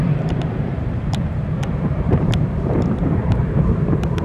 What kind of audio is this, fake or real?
fake